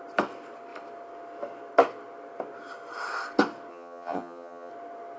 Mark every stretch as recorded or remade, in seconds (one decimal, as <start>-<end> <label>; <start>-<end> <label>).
0.0-3.7 recorded; 3.7-4.7 remade; 4.7-5.2 recorded